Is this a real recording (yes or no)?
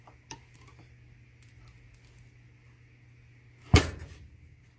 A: yes